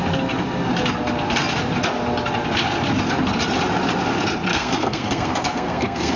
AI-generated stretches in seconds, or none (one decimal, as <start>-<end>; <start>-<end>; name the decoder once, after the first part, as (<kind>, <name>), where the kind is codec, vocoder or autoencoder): 4.5-6.2 (codec, SNAC)